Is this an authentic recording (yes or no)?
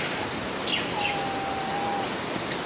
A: yes